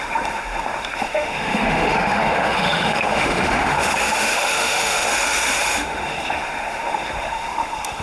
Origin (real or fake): fake